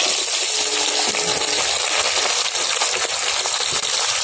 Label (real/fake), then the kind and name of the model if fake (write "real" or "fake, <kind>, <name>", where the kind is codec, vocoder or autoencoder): real